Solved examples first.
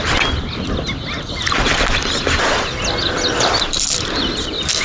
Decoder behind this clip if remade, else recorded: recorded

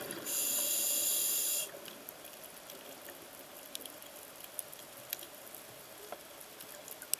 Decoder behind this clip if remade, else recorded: recorded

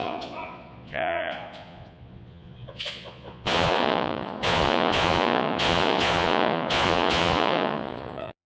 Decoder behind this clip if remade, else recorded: remade, vocoder, Vocos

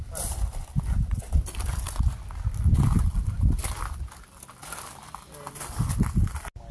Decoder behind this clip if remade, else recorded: recorded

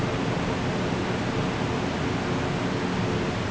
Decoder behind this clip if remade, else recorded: recorded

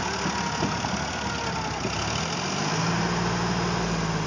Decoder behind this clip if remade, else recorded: recorded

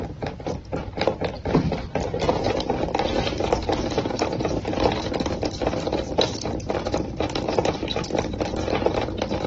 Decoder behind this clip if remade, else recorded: remade, vocoder, BigVGAN v2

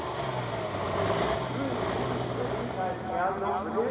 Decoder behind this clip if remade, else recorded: recorded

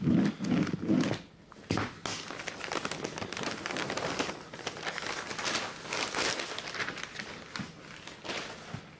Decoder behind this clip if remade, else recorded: recorded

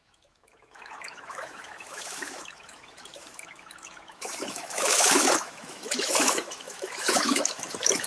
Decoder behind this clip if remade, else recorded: remade, autoencoder, DAC-VAE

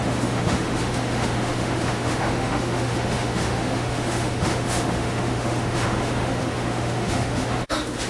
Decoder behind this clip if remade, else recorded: remade, autoencoder, DAC-VAE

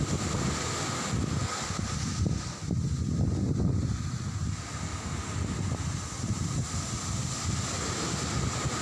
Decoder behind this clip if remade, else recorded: recorded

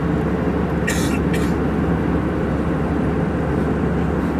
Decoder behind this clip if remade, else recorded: recorded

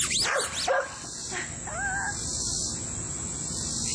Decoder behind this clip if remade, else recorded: recorded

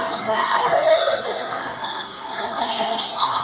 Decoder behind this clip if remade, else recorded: remade, codec, SNAC